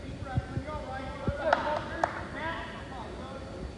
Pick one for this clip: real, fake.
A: real